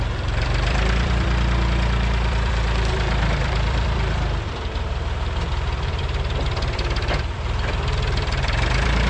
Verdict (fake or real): fake